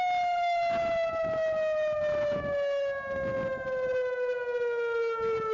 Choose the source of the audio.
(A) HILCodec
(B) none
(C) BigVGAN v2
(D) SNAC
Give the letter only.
B